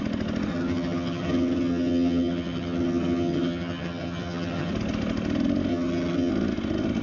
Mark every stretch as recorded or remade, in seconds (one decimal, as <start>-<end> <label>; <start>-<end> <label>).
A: 0.0-0.5 recorded; 0.5-4.7 remade; 4.7-5.7 recorded; 5.7-6.3 remade; 6.3-7.0 recorded